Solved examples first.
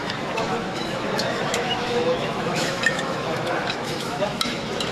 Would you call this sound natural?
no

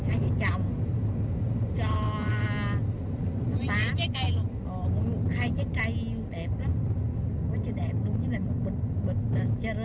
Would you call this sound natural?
yes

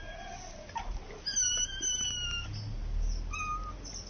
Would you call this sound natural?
yes